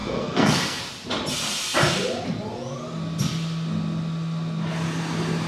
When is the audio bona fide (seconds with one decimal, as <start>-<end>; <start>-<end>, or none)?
0.8-5.5